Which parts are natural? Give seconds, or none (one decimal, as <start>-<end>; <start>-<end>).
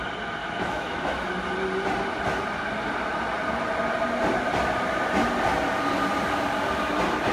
0.0-0.4; 1.3-7.3